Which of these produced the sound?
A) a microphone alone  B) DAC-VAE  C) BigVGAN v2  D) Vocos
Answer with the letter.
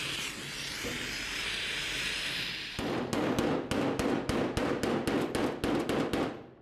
A